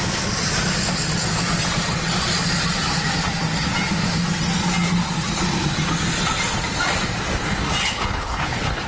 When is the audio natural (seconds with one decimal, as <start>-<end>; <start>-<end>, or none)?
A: 0.0-7.8